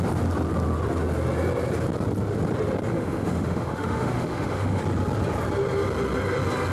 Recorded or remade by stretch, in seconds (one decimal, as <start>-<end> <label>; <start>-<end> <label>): 0.0-2.9 recorded; 2.9-4.8 remade; 4.8-6.7 recorded